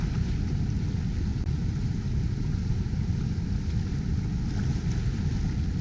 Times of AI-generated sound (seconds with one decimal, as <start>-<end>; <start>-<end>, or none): 1.3-3.2